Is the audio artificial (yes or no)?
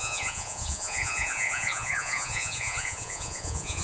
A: yes